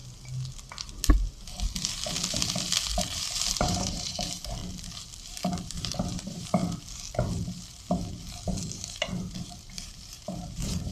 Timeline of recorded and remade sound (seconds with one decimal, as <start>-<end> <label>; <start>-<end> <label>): 0.0-3.0 recorded; 3.0-4.6 remade; 4.6-5.6 recorded; 5.6-6.6 remade; 6.6-8.6 recorded; 8.6-10.9 remade